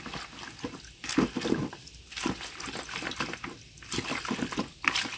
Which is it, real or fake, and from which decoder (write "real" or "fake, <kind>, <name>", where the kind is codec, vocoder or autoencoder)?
real